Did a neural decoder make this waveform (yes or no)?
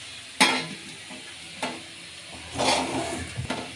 no